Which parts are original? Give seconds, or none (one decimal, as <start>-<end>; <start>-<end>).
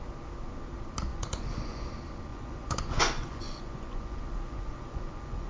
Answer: 0.0-1.1; 1.9-2.3